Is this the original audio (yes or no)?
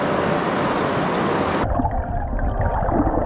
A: yes